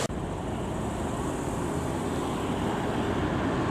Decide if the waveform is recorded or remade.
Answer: recorded